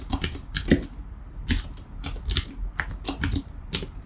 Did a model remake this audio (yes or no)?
no